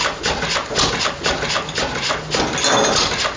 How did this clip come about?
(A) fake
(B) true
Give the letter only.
B